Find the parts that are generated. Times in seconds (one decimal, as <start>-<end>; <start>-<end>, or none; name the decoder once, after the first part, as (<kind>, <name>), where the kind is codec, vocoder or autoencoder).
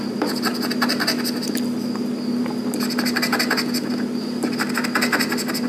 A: none